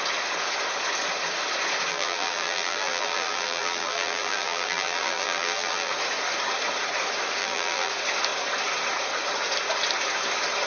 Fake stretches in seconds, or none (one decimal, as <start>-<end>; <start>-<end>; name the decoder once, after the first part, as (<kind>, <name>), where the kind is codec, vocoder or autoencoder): 1.9-5.9 (vocoder, BigVGAN v2); 7.4-7.9